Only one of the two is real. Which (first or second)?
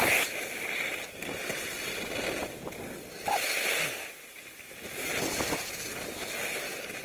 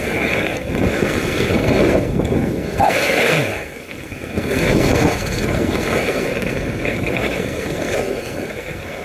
first